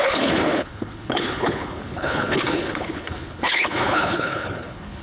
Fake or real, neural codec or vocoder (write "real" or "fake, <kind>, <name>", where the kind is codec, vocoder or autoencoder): fake, codec, HILCodec